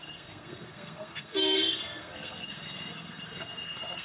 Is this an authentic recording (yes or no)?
no